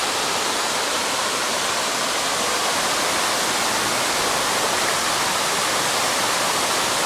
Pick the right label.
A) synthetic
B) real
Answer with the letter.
B